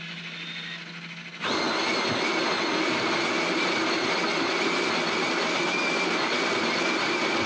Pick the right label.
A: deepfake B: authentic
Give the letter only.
B